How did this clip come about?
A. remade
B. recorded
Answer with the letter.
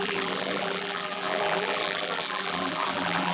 A